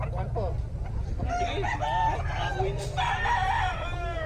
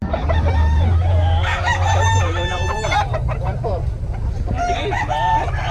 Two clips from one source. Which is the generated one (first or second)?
second